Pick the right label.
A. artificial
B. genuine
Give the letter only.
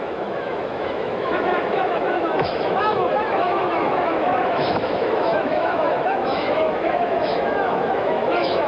A